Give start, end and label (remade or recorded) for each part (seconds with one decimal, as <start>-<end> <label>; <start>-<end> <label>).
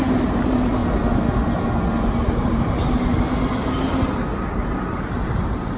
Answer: 0.0-0.8 remade; 0.8-2.3 recorded; 2.3-2.8 remade; 2.8-5.3 recorded; 5.3-5.8 remade